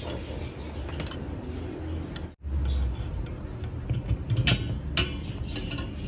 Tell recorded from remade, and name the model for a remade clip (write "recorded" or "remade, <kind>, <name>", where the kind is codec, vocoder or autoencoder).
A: recorded